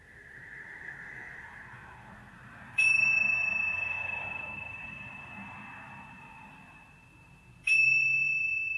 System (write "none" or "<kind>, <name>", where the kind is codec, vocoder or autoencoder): vocoder, BigVGAN v2